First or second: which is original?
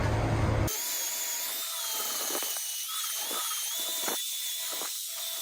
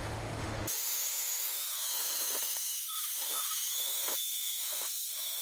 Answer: first